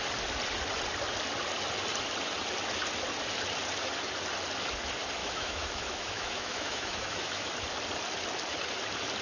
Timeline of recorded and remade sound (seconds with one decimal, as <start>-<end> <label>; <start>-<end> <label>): 0.0-5.2 recorded; 5.2-7.5 remade; 7.5-9.2 recorded